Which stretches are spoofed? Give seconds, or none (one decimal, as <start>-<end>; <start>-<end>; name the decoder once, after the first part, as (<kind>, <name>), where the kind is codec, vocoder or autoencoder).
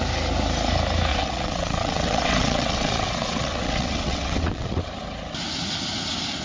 1.1-4.9 (vocoder, WaveNeXt)